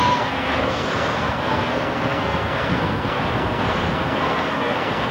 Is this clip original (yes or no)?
no